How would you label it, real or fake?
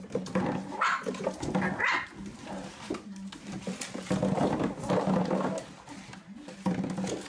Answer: real